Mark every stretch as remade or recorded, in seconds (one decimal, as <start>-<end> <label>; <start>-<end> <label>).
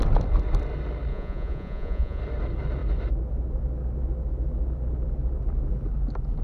0.0-1.1 recorded; 1.1-2.2 remade; 2.2-6.4 recorded